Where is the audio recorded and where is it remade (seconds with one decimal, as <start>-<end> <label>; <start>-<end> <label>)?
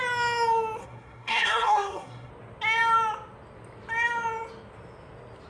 0.0-0.8 recorded; 0.8-2.3 remade; 2.3-5.5 recorded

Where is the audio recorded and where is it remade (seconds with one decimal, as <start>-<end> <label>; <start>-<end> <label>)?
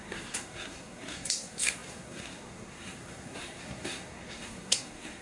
0.0-5.2 remade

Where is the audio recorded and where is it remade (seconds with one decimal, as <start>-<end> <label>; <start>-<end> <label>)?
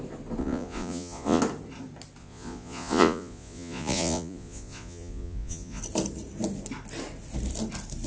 0.0-0.4 recorded; 0.4-1.4 remade; 1.4-2.2 recorded; 2.2-5.8 remade; 5.8-8.1 recorded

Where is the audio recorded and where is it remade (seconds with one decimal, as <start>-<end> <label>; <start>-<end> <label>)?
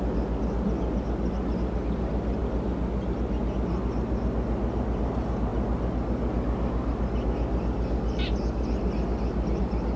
0.0-10.0 recorded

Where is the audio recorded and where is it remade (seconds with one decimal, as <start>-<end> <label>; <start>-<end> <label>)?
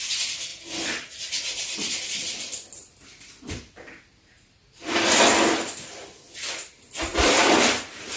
0.0-5.3 recorded; 5.3-6.6 remade; 6.6-7.1 recorded; 7.1-7.7 remade; 7.7-8.2 recorded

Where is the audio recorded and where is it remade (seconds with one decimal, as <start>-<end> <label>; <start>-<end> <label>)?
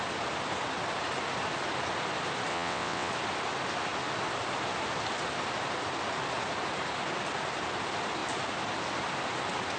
0.0-2.5 recorded; 2.5-3.1 remade; 3.1-9.8 recorded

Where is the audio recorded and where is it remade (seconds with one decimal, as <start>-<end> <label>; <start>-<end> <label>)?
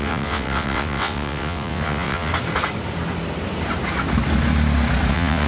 0.0-2.3 remade; 2.3-5.1 recorded; 5.1-5.5 remade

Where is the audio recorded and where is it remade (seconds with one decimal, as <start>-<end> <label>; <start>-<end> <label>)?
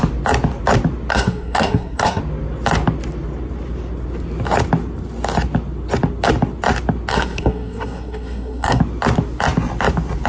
0.0-1.1 recorded; 1.1-2.2 remade; 2.2-7.1 recorded; 7.1-8.8 remade; 8.8-10.3 recorded